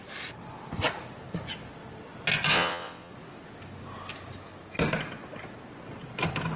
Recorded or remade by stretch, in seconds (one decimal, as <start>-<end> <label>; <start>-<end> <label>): 0.0-2.5 recorded; 2.5-3.1 remade; 3.1-6.6 recorded